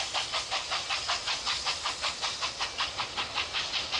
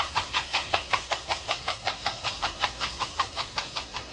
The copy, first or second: second